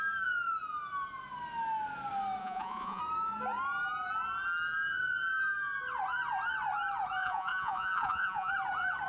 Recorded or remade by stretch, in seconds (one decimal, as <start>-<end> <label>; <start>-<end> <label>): 0.0-2.4 recorded; 2.4-3.0 remade; 3.0-7.2 recorded; 7.2-8.5 remade; 8.5-9.1 recorded